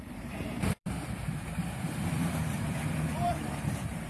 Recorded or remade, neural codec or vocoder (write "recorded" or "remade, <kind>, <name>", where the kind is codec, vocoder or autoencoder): remade, vocoder, BigVGAN v2